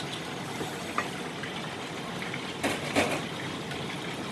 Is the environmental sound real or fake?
real